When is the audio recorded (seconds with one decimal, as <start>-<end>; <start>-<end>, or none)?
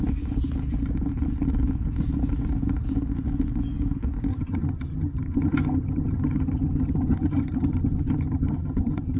0.0-4.3